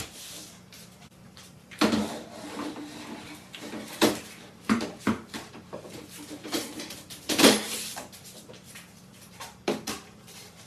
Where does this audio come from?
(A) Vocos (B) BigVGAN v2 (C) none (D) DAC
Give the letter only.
B